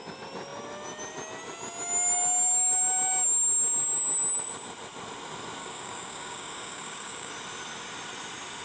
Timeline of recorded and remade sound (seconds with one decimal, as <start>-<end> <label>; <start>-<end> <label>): 0.0-5.6 recorded; 5.6-7.3 remade; 7.3-8.6 recorded